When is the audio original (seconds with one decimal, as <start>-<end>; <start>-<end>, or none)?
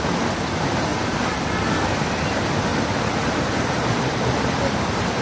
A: 0.0-0.9; 1.9-2.7